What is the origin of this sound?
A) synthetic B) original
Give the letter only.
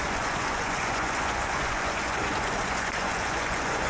A